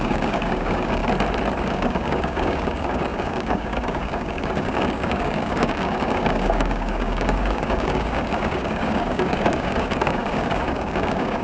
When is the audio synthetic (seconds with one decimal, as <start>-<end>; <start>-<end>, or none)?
0.0-1.0; 1.6-11.4